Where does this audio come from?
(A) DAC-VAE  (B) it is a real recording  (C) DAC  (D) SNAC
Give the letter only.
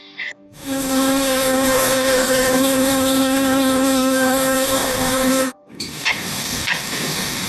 C